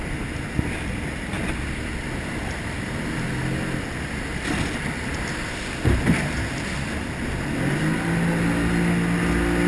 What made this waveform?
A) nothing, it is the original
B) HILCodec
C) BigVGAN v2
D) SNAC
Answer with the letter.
A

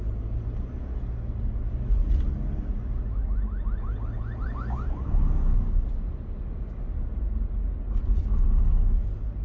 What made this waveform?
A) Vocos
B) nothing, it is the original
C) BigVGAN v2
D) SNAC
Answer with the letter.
B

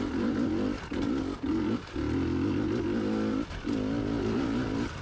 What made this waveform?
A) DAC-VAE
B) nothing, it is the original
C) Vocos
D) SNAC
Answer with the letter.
B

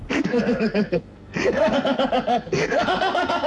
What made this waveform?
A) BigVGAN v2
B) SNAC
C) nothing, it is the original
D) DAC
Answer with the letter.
B